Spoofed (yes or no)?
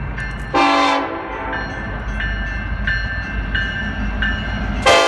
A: no